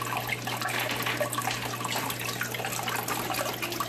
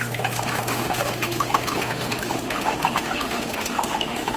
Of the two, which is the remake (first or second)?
second